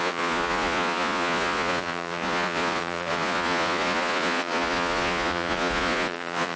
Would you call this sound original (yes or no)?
no